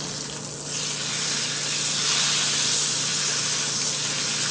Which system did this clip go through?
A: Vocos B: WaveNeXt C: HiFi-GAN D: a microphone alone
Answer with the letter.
D